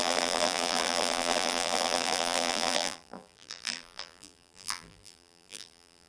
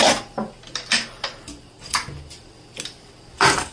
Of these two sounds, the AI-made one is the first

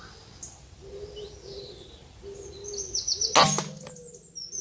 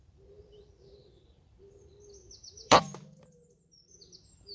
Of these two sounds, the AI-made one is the second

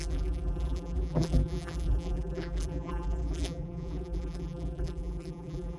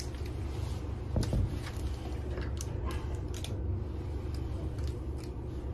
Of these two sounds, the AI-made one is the first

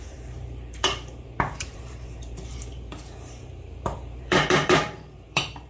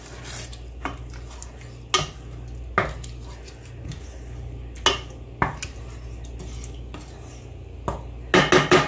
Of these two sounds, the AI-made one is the first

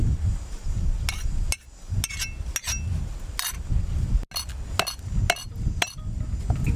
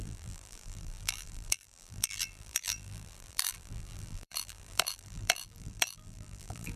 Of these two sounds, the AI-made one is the second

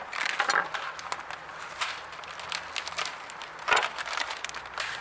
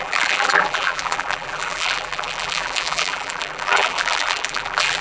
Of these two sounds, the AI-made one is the second